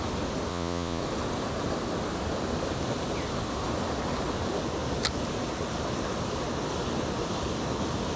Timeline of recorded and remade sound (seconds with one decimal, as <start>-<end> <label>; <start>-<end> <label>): 0.0-0.5 recorded; 0.5-1.0 remade; 1.0-8.2 recorded

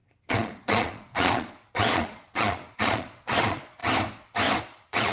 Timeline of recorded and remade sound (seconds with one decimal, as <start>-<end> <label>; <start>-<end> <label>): 0.0-3.8 remade; 3.8-4.6 recorded; 4.6-5.1 remade

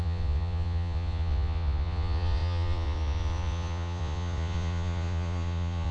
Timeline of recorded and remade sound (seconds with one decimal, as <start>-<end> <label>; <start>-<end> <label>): 0.0-5.9 remade

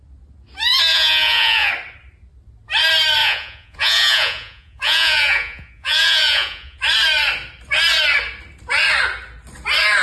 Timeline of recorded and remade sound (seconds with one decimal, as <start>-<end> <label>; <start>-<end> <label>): 0.0-0.9 recorded; 0.9-1.7 remade; 1.7-3.2 recorded; 3.2-6.8 remade; 6.8-10.0 recorded

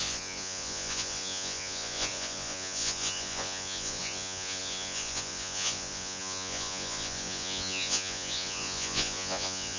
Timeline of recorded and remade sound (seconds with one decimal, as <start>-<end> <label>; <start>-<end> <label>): 0.0-9.8 remade

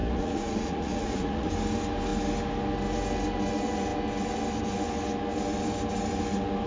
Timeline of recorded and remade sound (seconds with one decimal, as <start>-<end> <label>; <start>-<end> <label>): 0.0-1.5 remade; 1.5-6.7 recorded